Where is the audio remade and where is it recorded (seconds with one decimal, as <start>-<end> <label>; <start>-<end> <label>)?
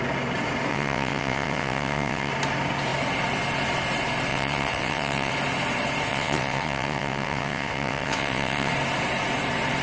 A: 0.0-0.7 recorded; 0.7-2.3 remade; 2.3-4.3 recorded; 4.3-5.3 remade; 5.3-6.1 recorded; 6.1-8.7 remade; 8.7-9.8 recorded